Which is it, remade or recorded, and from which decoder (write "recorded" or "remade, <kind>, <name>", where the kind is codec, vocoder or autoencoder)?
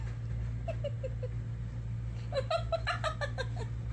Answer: recorded